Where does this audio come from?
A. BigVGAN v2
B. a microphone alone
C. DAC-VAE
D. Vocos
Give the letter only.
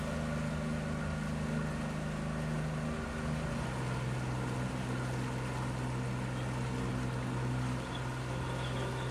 B